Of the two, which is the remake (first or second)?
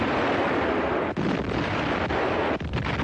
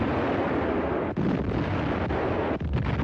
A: first